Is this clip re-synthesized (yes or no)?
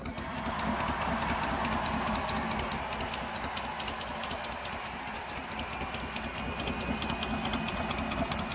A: no